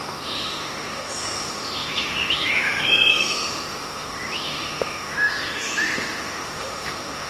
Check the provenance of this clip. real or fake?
fake